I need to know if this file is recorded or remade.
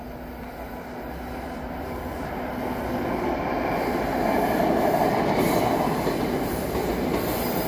recorded